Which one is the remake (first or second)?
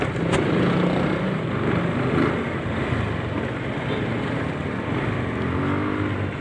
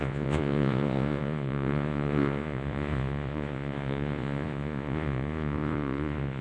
second